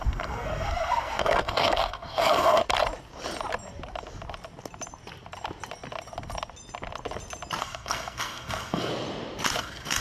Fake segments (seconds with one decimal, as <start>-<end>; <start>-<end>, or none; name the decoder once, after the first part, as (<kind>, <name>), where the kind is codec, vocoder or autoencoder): 0.0-2.6 (codec, SNAC); 7.6-8.9; 9.6-10.0